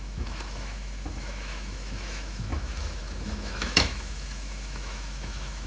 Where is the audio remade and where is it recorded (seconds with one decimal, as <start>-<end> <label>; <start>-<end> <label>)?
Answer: 0.0-5.7 remade